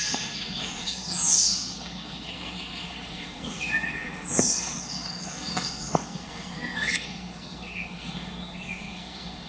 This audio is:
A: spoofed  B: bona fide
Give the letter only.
A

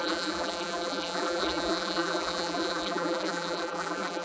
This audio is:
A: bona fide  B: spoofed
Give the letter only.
B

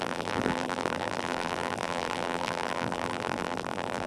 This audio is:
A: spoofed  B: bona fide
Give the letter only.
A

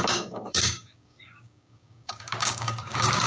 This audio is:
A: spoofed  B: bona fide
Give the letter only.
A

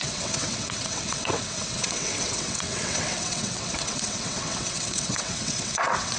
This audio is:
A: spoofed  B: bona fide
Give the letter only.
A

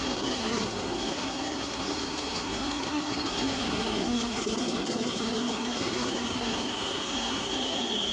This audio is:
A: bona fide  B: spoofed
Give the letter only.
B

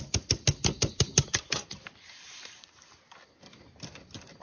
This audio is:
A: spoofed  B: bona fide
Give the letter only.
B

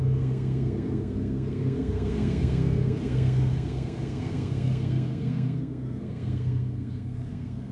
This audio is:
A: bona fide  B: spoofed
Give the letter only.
B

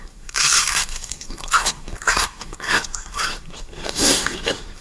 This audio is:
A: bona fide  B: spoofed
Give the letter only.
B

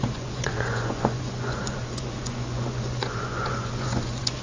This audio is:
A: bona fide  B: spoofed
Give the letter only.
B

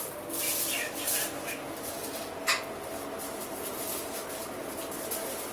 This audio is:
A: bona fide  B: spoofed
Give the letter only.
A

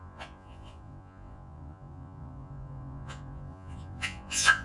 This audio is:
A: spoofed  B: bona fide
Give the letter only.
A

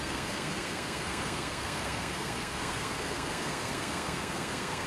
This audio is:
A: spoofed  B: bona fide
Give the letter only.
A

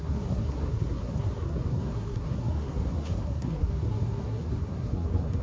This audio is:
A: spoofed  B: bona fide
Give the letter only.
A